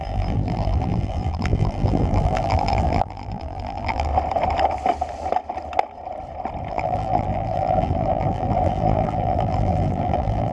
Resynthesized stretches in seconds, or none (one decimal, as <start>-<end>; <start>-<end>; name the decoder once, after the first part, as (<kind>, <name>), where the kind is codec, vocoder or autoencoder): 0.0-4.1 (vocoder, BigVGAN v2); 6.7-10.5